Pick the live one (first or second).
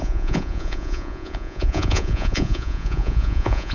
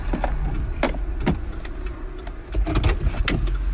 second